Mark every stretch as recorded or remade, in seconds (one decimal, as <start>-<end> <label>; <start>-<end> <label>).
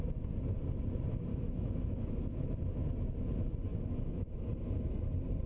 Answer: 0.0-1.3 recorded; 1.3-2.5 remade; 2.5-3.7 recorded; 3.7-4.3 remade; 4.3-5.5 recorded